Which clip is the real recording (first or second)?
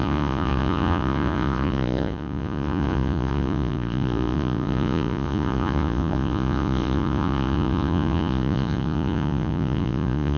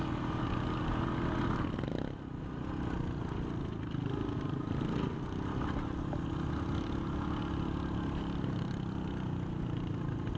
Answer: second